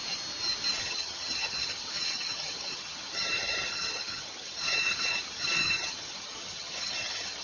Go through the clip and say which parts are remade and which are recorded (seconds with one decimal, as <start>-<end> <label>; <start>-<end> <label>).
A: 0.0-0.8 recorded; 0.8-7.4 remade